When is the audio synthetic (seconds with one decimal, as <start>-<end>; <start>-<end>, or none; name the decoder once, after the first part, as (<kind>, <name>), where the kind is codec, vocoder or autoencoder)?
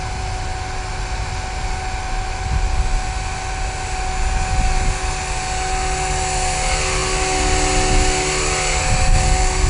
none